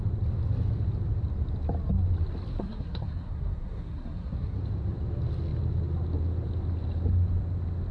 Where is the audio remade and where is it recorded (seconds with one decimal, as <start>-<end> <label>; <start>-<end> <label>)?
0.0-2.5 recorded; 2.5-4.6 remade; 4.6-7.9 recorded